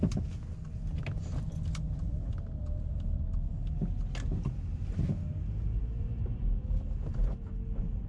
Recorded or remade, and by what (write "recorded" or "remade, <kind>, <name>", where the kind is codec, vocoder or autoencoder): recorded